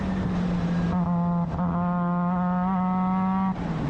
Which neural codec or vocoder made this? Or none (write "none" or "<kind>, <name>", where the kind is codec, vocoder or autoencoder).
none